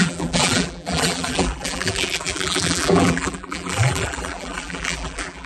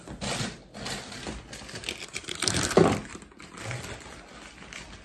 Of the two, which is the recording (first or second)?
second